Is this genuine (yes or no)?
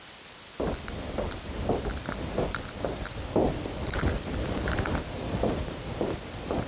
no